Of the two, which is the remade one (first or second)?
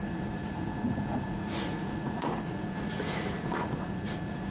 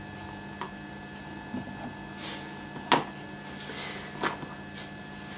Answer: first